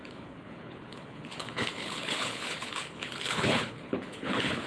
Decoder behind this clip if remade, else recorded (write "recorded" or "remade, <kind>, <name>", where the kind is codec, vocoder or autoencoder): remade, codec, HILCodec